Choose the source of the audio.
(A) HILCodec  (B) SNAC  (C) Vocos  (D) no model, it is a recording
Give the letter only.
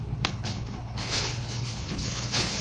A